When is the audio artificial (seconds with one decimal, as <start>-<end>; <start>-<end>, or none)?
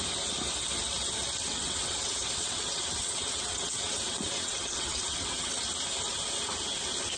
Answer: 1.4-5.6